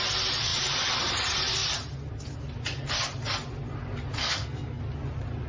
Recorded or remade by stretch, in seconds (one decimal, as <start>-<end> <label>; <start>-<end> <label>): 0.0-4.2 recorded; 4.2-4.8 remade; 4.8-5.5 recorded